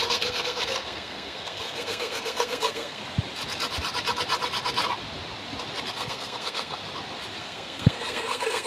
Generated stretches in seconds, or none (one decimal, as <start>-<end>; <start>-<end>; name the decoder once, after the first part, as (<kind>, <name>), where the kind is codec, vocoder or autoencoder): 0.0-3.0 (codec, SNAC); 5.9-6.8; 7.4-8.7